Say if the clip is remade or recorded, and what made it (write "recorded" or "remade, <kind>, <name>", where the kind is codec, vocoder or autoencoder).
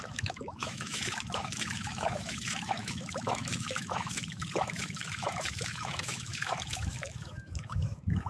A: remade, autoencoder, DAC-VAE